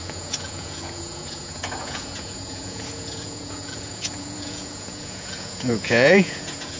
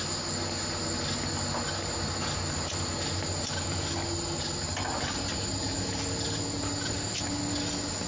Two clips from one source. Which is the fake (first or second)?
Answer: first